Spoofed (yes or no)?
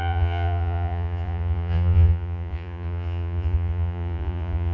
yes